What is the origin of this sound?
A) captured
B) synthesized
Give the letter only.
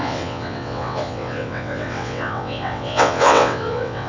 B